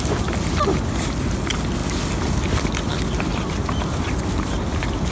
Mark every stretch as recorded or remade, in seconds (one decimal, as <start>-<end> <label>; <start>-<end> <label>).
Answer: 0.0-5.1 recorded